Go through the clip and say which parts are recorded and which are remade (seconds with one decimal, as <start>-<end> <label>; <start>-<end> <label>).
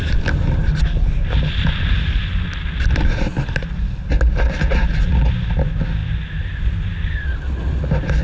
0.0-8.2 recorded